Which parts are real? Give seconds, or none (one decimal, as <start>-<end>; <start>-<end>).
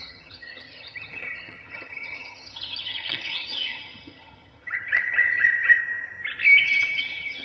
5.8-6.6